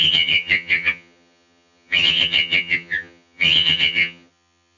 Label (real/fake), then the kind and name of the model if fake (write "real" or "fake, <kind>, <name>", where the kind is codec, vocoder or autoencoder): fake, vocoder, HiFi-GAN